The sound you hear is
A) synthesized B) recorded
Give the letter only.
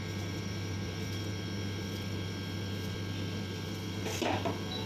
B